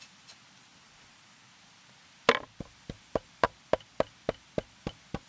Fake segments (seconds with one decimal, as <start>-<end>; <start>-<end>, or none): none